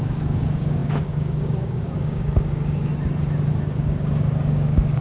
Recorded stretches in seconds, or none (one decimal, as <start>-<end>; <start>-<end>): 2.9-3.5